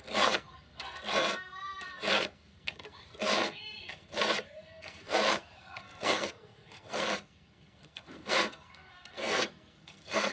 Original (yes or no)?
no